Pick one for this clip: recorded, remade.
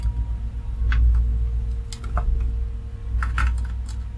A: recorded